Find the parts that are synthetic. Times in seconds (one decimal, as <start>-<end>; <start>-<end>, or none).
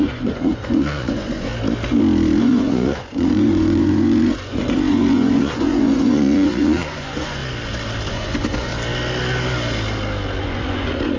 0.0-1.5; 2.4-7.4; 8.1-8.7; 10.4-11.2